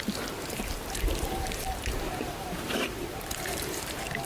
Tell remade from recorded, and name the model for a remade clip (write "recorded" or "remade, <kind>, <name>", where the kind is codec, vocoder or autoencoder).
remade, vocoder, BigVGAN v2